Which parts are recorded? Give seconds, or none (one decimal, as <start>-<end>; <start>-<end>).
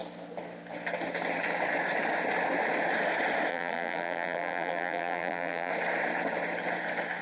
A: 0.0-3.5; 5.7-7.2